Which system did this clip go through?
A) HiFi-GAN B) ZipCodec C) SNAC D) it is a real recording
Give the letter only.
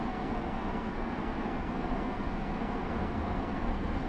C